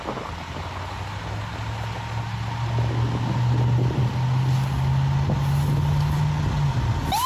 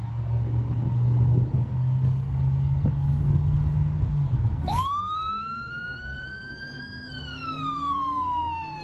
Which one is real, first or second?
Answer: first